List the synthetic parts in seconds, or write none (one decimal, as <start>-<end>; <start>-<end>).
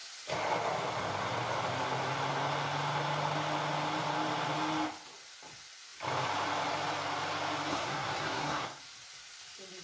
7.7-8.8